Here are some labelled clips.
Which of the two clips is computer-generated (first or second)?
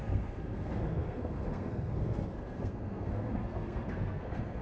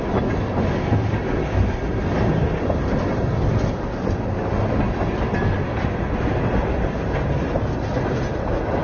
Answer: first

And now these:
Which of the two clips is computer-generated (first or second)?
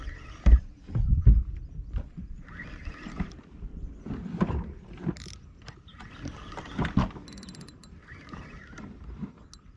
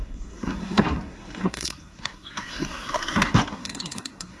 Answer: second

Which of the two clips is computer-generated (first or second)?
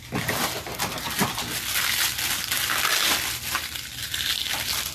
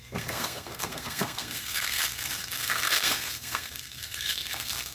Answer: second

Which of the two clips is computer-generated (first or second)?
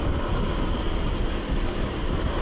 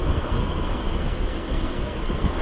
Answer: second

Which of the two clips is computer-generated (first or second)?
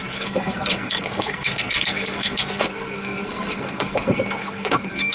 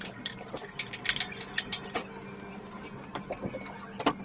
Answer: first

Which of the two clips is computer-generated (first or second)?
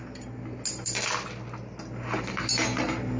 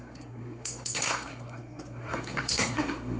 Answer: second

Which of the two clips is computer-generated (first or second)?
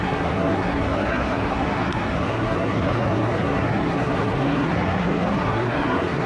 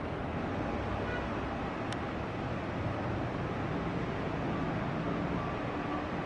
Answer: first